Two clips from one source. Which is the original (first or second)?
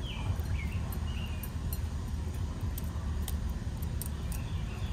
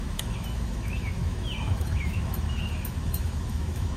first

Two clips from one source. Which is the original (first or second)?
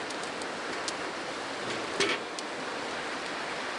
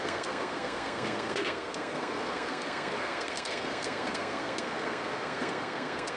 first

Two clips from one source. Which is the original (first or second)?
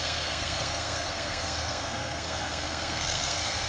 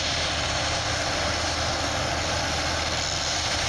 second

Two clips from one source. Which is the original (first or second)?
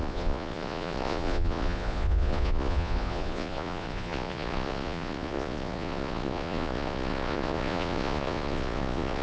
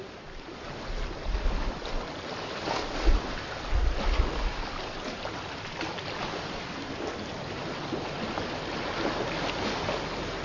second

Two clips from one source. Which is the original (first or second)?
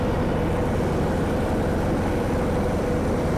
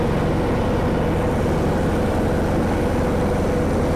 second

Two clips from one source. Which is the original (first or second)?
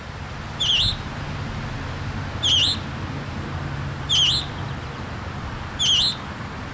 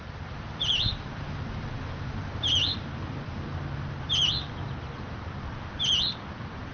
first